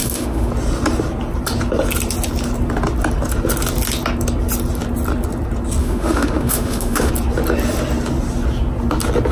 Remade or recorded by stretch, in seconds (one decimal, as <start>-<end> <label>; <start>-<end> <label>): 0.0-0.5 remade; 0.5-5.8 recorded; 5.8-7.1 remade; 7.1-9.3 recorded